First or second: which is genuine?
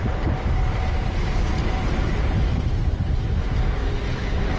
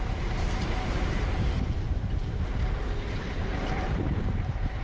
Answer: first